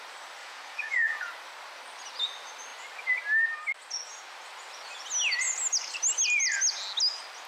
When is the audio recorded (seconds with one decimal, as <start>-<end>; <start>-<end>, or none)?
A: 0.0-0.4; 1.3-7.5

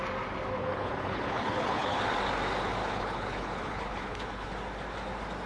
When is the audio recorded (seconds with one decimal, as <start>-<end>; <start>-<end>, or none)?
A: 0.0-0.6; 2.0-2.8; 4.5-5.5

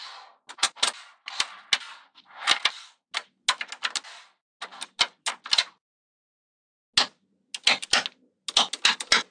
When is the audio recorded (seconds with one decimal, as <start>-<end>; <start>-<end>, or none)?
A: 0.0-9.3

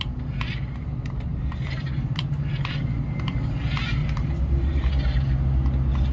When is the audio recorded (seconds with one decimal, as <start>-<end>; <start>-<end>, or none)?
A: 0.0-1.3; 2.5-4.0; 4.9-6.1

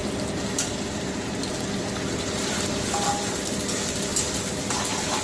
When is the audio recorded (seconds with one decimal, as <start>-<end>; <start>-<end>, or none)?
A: 0.0-5.2